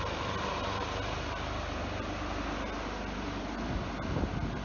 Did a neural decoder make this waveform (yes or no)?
no